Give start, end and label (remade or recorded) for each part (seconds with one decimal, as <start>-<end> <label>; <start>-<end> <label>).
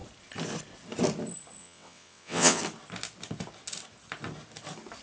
0.0-1.6 recorded; 1.6-2.6 remade; 2.6-5.0 recorded